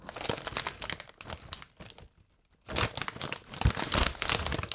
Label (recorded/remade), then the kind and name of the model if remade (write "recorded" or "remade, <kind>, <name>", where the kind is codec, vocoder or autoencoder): recorded